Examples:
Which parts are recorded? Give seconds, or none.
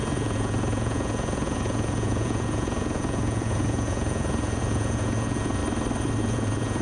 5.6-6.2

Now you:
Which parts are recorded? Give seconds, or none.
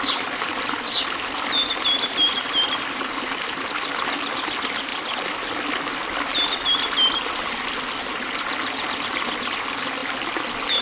0.0-10.8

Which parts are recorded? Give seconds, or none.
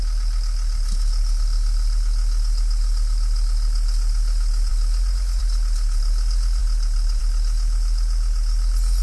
0.0-9.0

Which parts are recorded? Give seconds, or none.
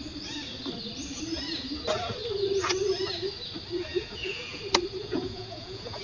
0.0-3.9; 4.6-5.0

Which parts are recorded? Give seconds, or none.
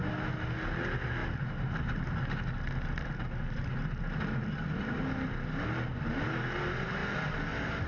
0.0-7.9